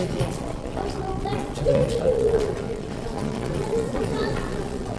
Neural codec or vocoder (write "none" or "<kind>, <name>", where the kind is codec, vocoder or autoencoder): vocoder, Vocos